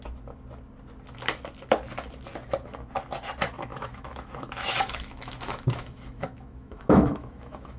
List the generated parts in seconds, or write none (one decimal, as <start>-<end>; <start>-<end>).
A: 3.7-7.8